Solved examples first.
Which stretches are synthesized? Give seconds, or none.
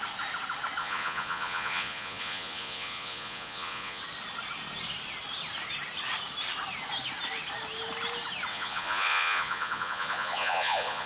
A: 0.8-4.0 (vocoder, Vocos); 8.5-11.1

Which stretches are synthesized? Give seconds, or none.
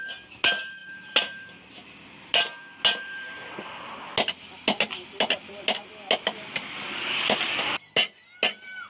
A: none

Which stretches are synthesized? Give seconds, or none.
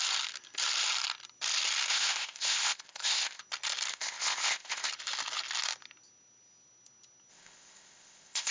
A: 1.9-3.4 (codec, ZipCodec); 3.9-4.9; 7.3-8.5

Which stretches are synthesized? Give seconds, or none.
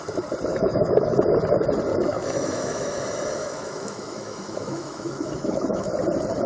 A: 0.5-1.2 (autoencoder, DAC-VAE); 1.9-3.0; 3.4-5.9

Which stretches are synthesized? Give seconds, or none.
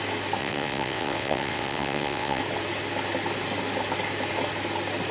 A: 0.4-2.4 (vocoder, WaveNeXt)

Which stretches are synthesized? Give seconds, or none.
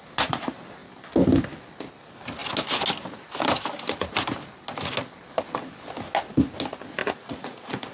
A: 7.0-7.9 (vocoder, Vocos)